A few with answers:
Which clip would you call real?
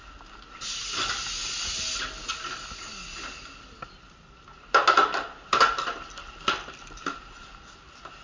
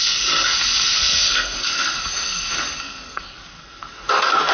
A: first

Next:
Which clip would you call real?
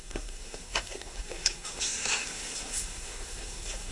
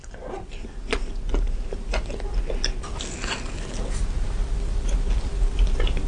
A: second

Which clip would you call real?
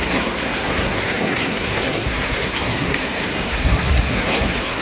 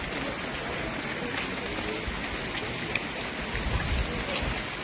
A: second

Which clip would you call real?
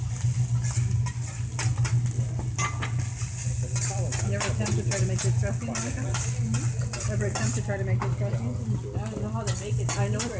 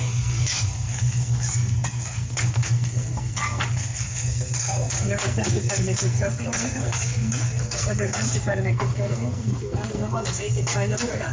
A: first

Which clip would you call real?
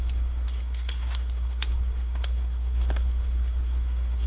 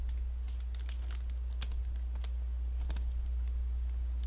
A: second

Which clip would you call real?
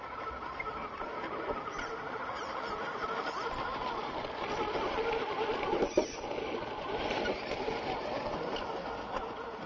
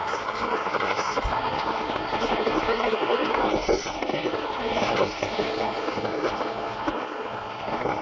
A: first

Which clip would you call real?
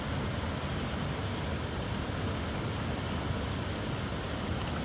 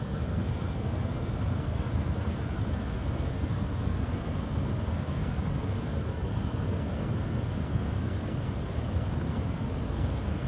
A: first